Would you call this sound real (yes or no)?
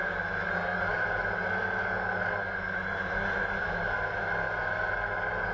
yes